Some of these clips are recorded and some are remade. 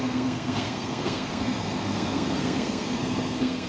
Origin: remade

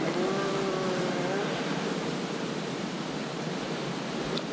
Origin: recorded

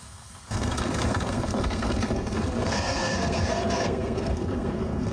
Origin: remade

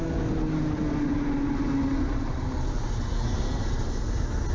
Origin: recorded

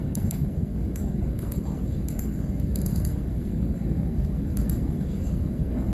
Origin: remade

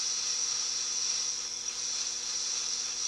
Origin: recorded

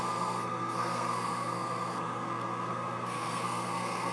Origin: remade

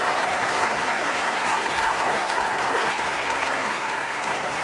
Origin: remade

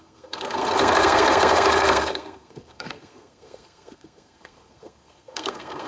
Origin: remade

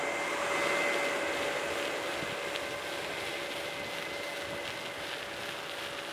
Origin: recorded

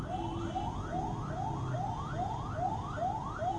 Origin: recorded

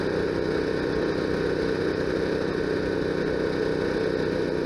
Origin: recorded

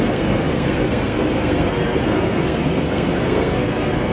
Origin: remade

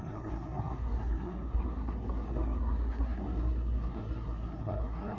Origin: remade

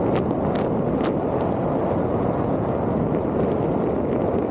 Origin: recorded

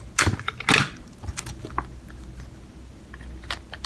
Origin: recorded